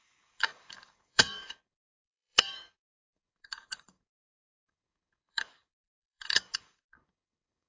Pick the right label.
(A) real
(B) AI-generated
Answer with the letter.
B